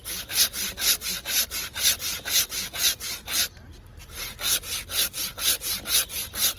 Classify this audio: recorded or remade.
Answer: recorded